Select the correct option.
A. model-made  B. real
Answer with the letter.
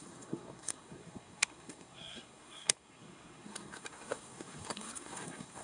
A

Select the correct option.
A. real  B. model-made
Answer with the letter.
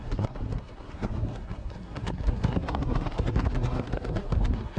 B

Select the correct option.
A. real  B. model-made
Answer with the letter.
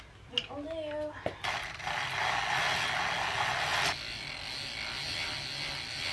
A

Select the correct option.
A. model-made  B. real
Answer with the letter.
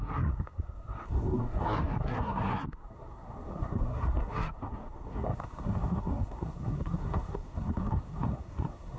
A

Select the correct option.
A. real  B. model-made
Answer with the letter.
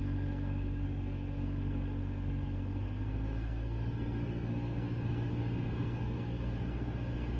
B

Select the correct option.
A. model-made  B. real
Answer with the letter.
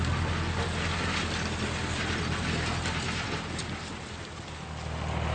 B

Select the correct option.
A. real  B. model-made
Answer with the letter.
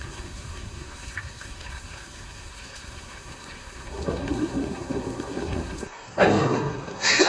B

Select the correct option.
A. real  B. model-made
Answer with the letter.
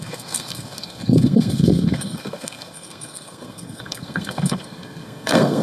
B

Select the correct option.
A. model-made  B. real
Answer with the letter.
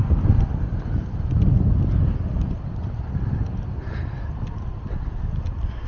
B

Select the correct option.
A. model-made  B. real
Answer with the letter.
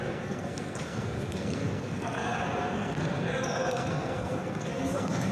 A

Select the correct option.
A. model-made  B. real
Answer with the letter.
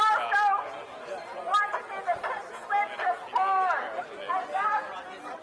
B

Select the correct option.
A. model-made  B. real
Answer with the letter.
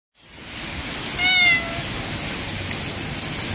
B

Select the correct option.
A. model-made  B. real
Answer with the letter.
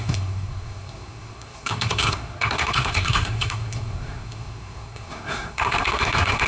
A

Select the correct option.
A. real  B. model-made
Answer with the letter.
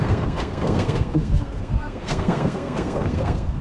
B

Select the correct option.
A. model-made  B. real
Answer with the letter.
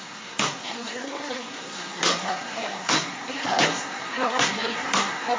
A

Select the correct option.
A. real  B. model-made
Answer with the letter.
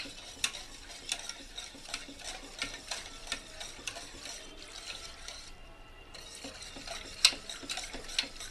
A